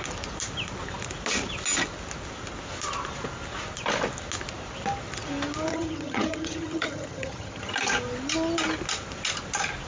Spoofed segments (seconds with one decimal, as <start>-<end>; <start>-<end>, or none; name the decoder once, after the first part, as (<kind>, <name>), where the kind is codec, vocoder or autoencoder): 5.7-7.7 (vocoder, HiFi-GAN)